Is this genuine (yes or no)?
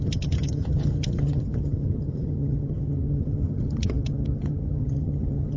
no